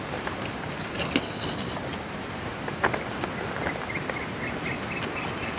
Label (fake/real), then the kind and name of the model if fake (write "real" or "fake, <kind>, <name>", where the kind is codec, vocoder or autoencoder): real